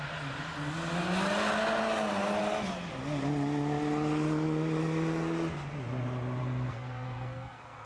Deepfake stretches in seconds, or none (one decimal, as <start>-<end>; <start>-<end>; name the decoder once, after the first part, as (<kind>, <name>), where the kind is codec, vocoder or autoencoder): 6.4-7.9 (codec, SNAC)